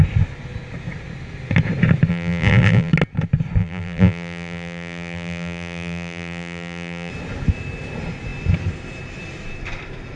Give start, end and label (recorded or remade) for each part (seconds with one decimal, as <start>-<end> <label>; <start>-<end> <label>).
0.0-2.1 recorded; 2.1-2.9 remade; 2.9-3.6 recorded; 3.6-7.1 remade; 7.1-10.2 recorded